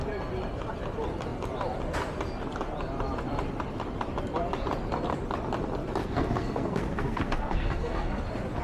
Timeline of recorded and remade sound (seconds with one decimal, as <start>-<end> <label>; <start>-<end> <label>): 0.0-6.0 recorded; 6.0-8.2 remade; 8.2-8.6 recorded